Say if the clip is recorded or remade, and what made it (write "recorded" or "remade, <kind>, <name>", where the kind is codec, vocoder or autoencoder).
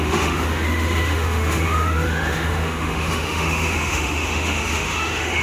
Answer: remade, autoencoder, DAC-VAE